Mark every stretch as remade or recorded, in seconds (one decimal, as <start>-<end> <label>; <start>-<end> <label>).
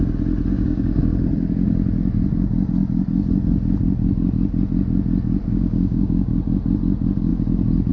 0.0-0.5 recorded; 0.5-1.1 remade; 1.1-5.5 recorded; 5.5-6.4 remade; 6.4-7.9 recorded